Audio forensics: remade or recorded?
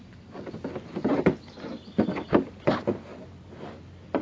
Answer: recorded